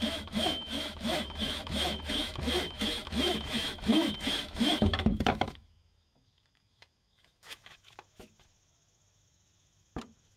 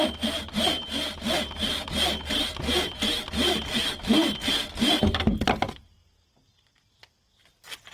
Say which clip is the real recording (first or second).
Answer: second